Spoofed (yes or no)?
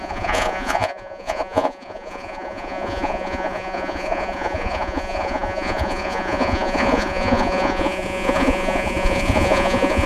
yes